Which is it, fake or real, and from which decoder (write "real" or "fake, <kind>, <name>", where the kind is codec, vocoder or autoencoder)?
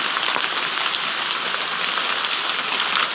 real